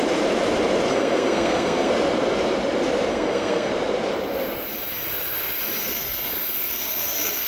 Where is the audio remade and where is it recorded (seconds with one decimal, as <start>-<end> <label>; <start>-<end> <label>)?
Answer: 0.0-0.9 recorded; 0.9-1.9 remade; 1.9-3.1 recorded; 3.1-3.7 remade; 3.7-5.8 recorded; 5.8-7.5 remade